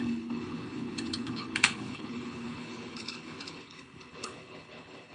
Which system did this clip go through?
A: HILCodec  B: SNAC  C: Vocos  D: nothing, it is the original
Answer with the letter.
A